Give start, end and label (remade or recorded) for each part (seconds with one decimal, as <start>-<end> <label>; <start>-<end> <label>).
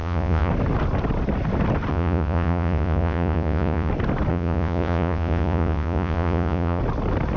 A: 0.0-0.5 remade; 0.5-1.9 recorded; 1.9-3.9 remade; 3.9-4.3 recorded; 4.3-6.8 remade; 6.8-7.4 recorded